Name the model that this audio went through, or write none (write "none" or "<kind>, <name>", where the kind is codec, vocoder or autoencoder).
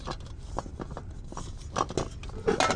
none